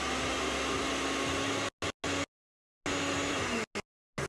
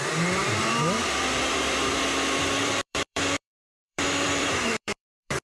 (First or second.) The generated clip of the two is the second